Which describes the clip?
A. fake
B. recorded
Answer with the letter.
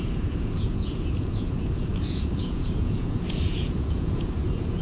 A